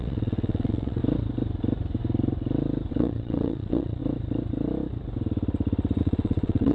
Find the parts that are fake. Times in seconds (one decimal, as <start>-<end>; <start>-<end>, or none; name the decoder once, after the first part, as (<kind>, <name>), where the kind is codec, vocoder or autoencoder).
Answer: 0.0-1.0 (vocoder, WaveNeXt); 2.9-4.0; 6.0-6.7